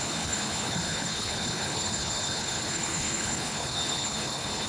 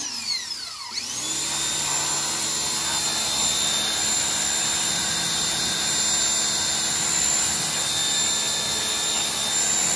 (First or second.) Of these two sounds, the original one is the second